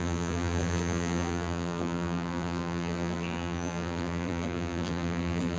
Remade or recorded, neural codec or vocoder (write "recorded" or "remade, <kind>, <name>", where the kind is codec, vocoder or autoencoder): remade, vocoder, BigVGAN v2